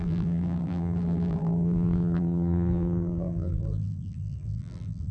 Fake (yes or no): yes